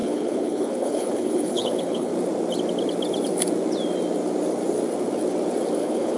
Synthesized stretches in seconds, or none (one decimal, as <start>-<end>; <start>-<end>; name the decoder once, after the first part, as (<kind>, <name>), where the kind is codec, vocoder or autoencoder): 0.0-2.1 (codec, HILCodec); 5.8-6.2